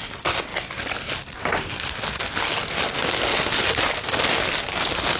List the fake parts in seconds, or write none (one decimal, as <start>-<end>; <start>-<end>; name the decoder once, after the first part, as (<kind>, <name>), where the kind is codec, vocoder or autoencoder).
none